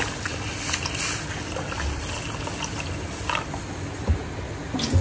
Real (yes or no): yes